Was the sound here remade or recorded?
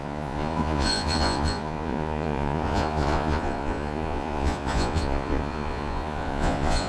remade